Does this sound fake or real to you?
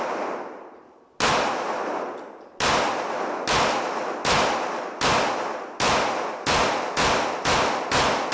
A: real